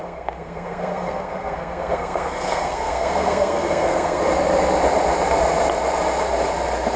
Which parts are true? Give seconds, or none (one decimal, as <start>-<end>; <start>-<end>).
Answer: 4.2-7.0